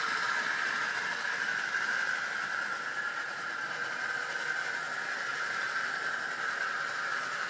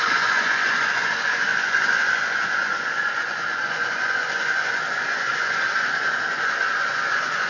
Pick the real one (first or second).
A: first